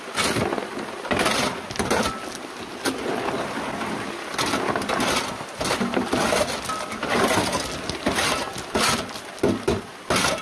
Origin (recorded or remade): recorded